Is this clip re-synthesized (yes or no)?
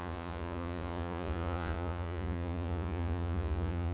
yes